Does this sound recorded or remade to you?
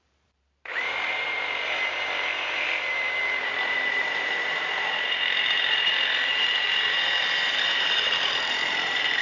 remade